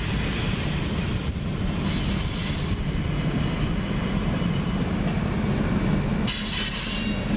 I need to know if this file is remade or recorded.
recorded